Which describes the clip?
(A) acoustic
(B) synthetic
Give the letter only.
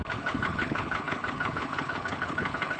B